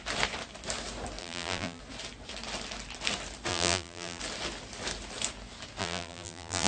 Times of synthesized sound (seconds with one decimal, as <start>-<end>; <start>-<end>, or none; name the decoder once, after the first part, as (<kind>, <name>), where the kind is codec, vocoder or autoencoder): 1.2-1.8 (vocoder, BigVGAN v2); 3.5-4.2; 5.8-6.7